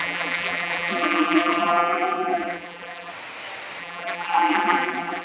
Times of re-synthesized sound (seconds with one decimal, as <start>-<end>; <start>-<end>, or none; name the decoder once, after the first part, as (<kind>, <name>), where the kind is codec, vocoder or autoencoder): 0.0-3.1 (vocoder, BigVGAN v2); 3.8-5.2